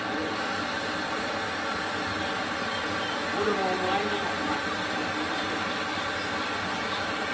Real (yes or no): yes